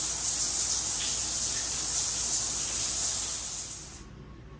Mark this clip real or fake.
real